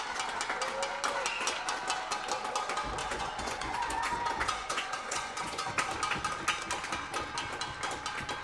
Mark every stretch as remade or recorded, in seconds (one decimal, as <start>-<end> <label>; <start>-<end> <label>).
0.0-3.0 recorded; 3.0-5.7 remade; 5.7-8.4 recorded